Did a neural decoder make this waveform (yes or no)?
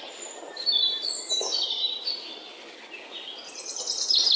yes